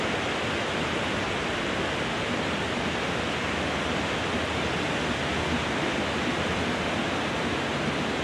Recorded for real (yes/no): yes